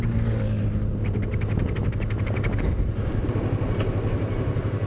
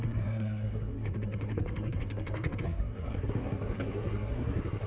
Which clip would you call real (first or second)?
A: first